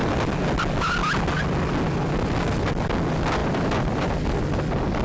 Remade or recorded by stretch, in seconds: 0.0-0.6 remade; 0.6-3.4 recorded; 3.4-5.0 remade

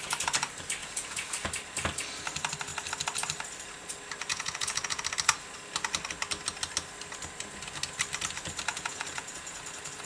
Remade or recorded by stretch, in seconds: 0.0-0.8 recorded; 0.8-1.3 remade; 1.3-4.3 recorded; 4.3-5.0 remade; 5.0-8.7 recorded; 8.7-9.6 remade; 9.6-10.1 recorded